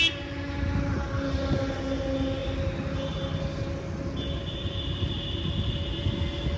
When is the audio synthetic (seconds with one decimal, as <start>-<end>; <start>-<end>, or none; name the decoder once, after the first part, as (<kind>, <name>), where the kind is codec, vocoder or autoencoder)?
none